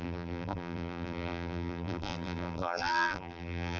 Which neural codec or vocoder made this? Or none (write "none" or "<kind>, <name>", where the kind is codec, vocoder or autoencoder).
vocoder, BigVGAN v2